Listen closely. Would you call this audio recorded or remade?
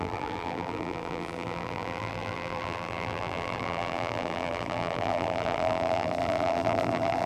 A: remade